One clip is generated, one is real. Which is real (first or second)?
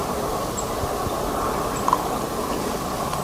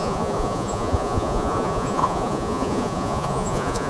first